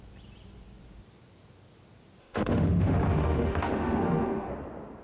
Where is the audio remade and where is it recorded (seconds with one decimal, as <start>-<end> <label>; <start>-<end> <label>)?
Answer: 0.0-2.2 recorded; 2.2-4.5 remade; 4.5-5.0 recorded